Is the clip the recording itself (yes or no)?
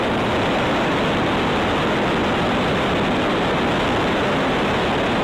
yes